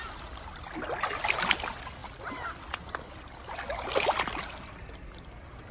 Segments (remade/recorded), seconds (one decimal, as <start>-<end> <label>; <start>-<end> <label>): 0.0-5.7 recorded